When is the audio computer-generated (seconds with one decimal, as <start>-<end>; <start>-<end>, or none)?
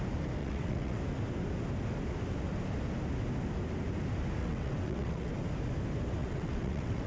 0.4-1.0; 4.4-5.3; 6.2-7.1